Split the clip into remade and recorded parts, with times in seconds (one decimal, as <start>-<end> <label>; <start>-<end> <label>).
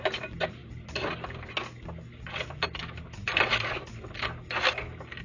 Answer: 0.0-5.2 recorded